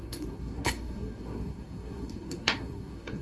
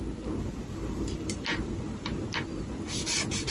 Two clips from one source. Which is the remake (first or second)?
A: first